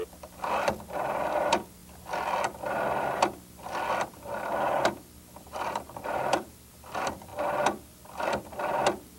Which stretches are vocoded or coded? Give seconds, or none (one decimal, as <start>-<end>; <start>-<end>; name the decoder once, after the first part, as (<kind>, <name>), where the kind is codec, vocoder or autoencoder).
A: 0.0-1.8 (vocoder, BigVGAN v2); 4.8-7.3